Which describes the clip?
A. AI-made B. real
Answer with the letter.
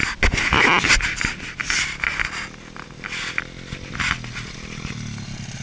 B